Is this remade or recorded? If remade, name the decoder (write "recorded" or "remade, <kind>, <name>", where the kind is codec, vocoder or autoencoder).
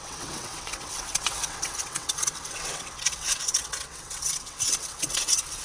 remade, vocoder, WaveNeXt